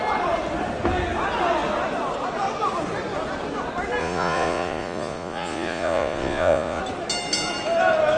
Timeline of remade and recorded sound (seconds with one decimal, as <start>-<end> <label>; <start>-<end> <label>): 0.0-4.0 recorded; 4.0-6.8 remade; 6.8-8.2 recorded